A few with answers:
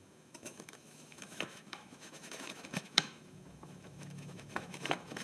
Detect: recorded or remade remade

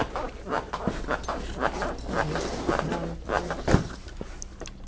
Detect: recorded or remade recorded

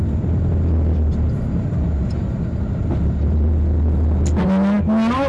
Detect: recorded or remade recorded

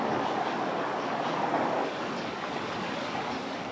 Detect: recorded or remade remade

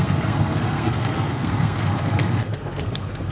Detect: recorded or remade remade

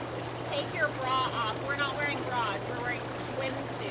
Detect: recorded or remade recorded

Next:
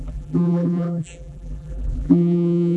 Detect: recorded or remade remade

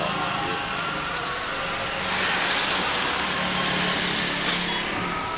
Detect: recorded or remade recorded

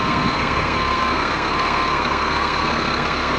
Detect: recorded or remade remade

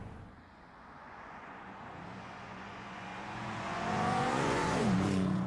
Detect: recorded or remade remade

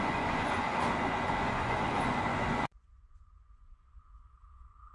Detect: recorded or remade remade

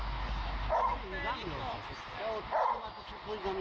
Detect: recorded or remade recorded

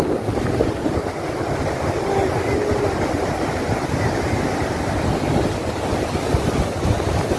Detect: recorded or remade recorded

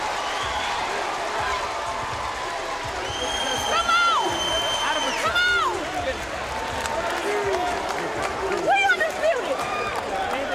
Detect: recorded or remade remade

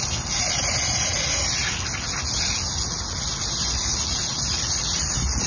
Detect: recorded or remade recorded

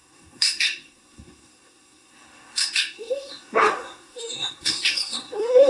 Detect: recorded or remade remade